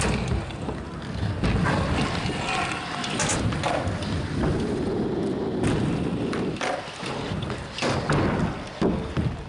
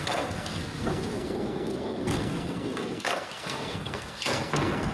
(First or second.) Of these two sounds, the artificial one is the second